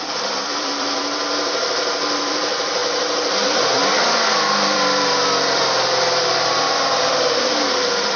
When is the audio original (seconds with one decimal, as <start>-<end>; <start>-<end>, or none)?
none